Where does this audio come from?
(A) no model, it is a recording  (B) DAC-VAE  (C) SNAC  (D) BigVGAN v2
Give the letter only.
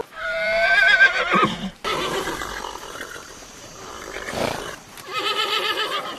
D